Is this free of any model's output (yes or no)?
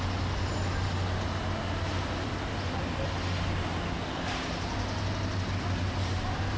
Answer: yes